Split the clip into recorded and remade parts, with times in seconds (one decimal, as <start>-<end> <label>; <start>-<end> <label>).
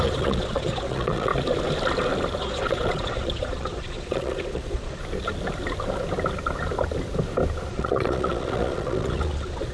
0.0-1.3 remade; 1.3-2.4 recorded; 2.4-5.0 remade; 5.0-7.7 recorded; 7.7-9.7 remade